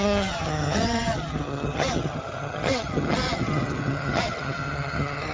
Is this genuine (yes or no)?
no